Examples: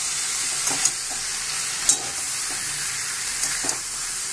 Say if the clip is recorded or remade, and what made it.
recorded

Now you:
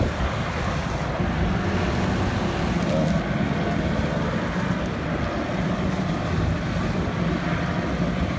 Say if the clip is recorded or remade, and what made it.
recorded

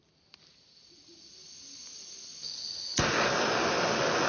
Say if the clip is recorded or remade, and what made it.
recorded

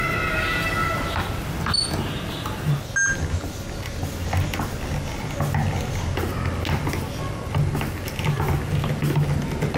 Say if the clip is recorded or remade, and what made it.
recorded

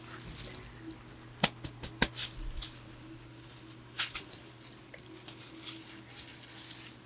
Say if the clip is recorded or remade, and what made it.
recorded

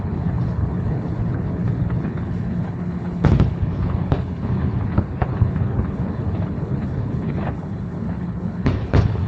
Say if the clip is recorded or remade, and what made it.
remade, codec, HILCodec